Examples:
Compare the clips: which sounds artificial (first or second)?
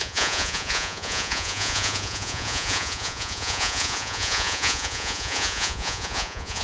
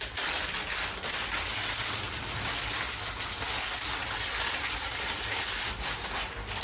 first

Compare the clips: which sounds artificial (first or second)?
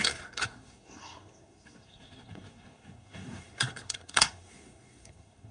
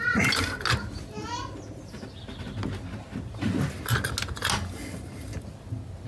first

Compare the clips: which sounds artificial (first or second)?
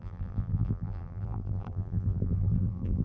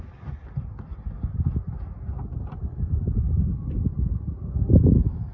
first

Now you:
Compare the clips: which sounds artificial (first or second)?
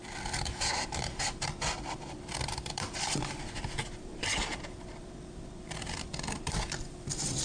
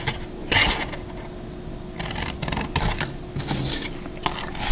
first